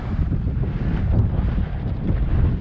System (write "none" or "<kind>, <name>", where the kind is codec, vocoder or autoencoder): none